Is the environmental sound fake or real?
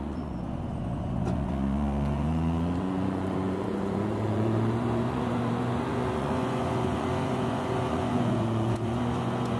fake